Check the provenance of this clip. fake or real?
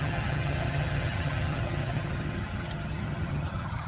fake